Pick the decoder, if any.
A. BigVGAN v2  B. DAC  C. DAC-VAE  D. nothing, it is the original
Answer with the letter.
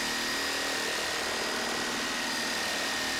D